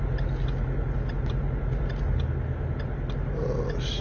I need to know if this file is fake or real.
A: real